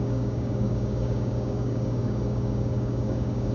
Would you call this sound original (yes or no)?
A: no